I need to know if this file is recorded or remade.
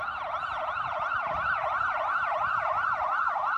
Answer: recorded